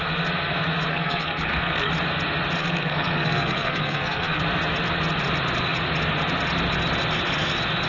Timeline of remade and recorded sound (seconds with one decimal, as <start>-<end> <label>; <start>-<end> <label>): 0.0-0.9 recorded; 0.9-1.9 remade; 1.9-2.6 recorded; 2.6-4.4 remade; 4.4-7.9 recorded